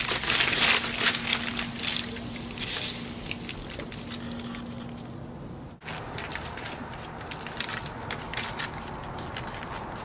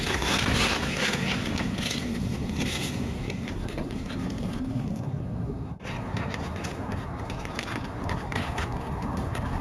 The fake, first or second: second